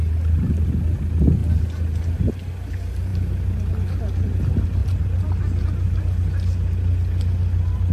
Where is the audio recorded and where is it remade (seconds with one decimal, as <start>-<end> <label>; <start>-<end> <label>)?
0.0-7.9 recorded